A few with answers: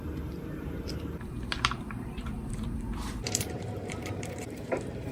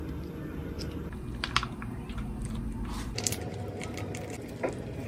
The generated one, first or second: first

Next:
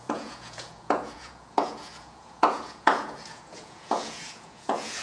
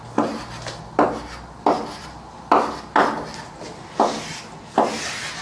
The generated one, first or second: first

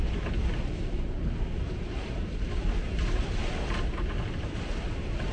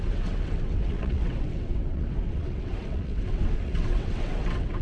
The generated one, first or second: second